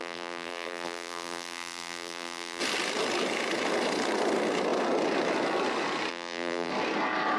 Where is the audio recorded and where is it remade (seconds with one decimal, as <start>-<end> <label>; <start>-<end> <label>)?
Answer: 0.0-2.6 remade; 2.6-6.1 recorded; 6.1-6.7 remade; 6.7-7.4 recorded